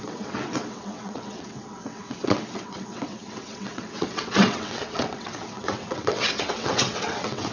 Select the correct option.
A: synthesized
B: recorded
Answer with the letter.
A